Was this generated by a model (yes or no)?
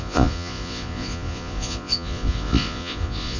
yes